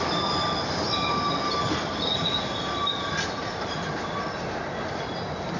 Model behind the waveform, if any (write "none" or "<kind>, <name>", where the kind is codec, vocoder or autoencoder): none